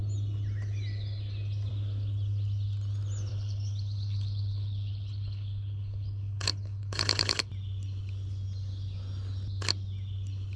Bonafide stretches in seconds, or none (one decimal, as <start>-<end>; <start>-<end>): 0.0-3.3; 7.5-10.6